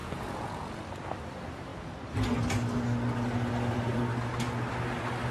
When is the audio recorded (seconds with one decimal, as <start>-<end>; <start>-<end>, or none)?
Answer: 0.8-5.3